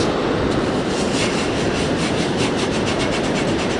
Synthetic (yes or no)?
no